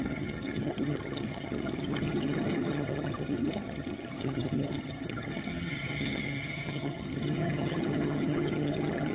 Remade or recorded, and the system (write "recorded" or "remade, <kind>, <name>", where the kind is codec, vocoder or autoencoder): remade, vocoder, HiFi-GAN